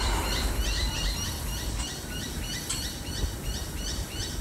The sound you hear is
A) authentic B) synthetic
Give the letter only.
A